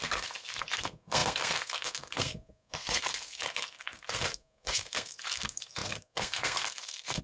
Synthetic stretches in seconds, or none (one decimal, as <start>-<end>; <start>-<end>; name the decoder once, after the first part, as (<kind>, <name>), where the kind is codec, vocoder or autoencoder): 0.0-7.2 (codec, SNAC)